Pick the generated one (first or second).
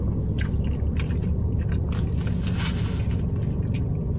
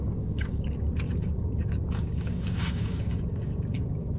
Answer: second